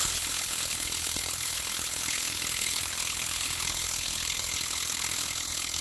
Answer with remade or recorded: remade